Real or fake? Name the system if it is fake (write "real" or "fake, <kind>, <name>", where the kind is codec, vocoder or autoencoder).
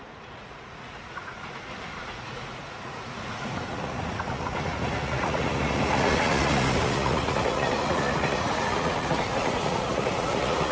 fake, vocoder, Vocos